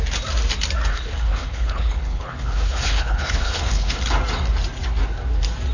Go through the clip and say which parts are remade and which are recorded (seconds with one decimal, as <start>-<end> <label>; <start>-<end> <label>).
0.0-0.9 recorded; 0.9-4.0 remade; 4.0-5.7 recorded